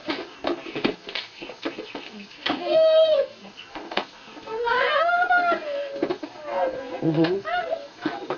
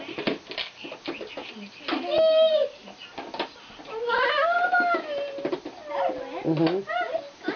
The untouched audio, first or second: second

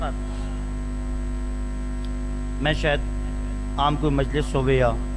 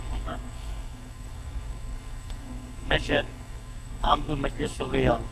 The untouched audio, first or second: first